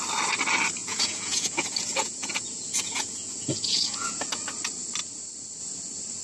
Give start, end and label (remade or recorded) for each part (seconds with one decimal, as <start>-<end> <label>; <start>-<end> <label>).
0.0-0.8 recorded; 0.8-4.4 remade; 4.4-6.2 recorded